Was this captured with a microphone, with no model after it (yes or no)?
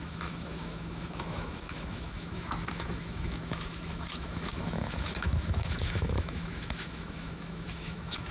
no